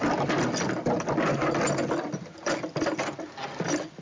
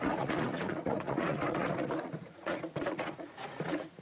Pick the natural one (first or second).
first